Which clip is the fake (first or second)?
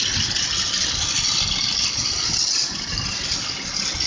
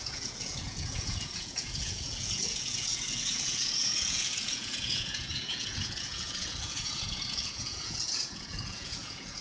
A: second